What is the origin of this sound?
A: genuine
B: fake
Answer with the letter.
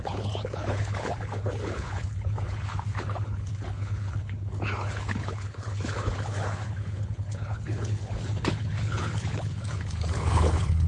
B